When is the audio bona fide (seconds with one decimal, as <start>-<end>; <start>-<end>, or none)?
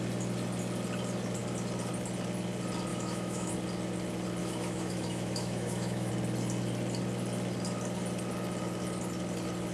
0.0-2.9; 3.5-4.4; 6.1-9.7